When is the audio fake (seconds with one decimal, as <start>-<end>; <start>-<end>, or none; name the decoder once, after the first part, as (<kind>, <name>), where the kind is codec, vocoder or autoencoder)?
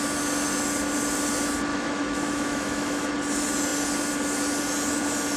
1.7-3.1 (autoencoder, DAC-VAE)